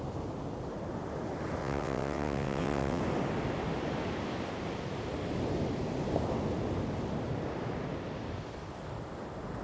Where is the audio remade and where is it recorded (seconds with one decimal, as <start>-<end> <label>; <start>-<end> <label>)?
0.0-1.6 recorded; 1.6-3.0 remade; 3.0-9.6 recorded